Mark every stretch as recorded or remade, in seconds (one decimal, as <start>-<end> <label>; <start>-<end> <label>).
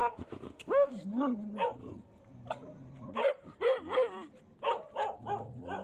0.0-0.9 remade; 0.9-5.8 recorded